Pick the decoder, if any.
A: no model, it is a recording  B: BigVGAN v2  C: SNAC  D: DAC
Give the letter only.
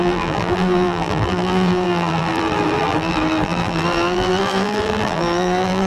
B